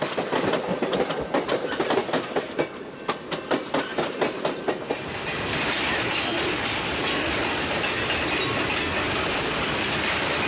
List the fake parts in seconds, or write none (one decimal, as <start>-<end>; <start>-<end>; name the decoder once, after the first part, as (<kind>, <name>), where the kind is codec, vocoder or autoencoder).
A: 3.9-4.9 (vocoder, BigVGAN v2)